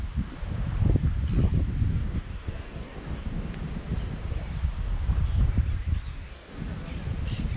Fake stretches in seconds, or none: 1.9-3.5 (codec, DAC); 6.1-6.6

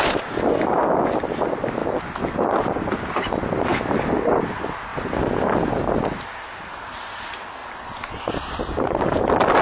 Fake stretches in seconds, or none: 7.6-9.2 (vocoder, BigVGAN v2)

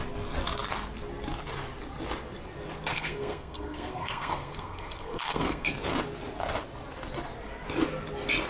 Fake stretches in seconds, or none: 2.9-5.7 (codec, SNAC)

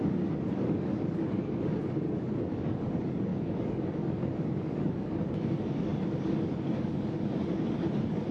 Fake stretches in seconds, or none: 0.0-8.3 (codec, DAC)

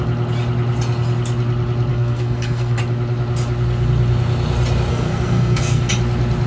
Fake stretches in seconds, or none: 1.9-2.8 (codec, SNAC); 4.9-5.9

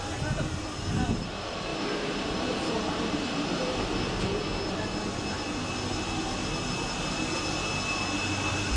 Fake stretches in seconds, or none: 1.7-3.8 (vocoder, BigVGAN v2)

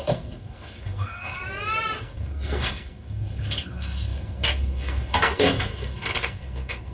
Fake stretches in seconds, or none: 0.0-1.4 (codec, SNAC); 2.0-6.9